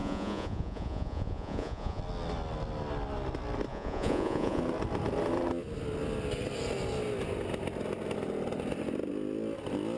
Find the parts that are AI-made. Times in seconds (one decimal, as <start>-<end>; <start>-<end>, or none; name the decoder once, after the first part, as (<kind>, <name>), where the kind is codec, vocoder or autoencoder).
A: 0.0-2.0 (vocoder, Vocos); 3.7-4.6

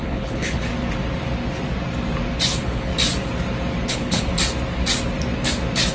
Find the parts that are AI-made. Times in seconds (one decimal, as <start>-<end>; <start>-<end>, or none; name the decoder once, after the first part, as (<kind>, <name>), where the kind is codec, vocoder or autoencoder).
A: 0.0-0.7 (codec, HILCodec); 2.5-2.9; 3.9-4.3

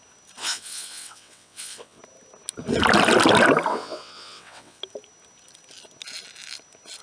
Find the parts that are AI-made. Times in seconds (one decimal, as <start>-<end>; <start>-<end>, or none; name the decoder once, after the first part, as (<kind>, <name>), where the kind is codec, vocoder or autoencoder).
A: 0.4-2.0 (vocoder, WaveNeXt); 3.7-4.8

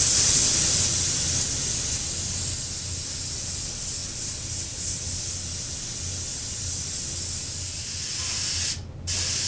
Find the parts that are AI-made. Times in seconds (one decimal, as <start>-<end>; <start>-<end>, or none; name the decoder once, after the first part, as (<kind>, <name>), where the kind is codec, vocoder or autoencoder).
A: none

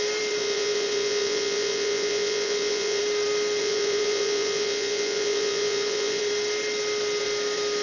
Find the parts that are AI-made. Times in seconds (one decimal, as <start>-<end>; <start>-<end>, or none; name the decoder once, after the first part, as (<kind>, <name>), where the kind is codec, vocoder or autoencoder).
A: 0.4-3.0 (vocoder, Vocos); 3.6-6.2

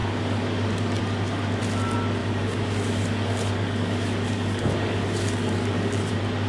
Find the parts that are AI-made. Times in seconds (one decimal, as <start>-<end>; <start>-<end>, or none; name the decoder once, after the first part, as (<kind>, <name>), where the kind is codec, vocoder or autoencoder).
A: 0.0-1.0 (codec, DAC); 2.2-6.1

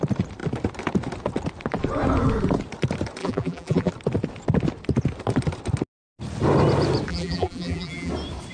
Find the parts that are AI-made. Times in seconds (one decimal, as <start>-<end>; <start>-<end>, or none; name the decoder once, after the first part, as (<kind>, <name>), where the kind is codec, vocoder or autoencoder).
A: 3.2-3.9 (vocoder, BigVGAN v2); 7.1-8.1

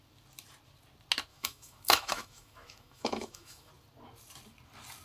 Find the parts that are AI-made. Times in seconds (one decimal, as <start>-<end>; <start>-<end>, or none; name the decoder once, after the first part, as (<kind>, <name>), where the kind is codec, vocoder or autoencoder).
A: 1.3-3.7 (autoencoder, DAC-VAE)